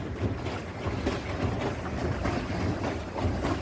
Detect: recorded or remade recorded